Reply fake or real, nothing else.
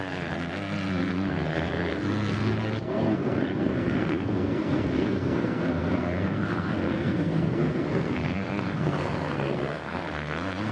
fake